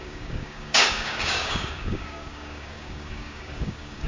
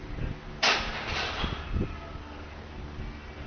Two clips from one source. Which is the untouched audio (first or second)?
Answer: second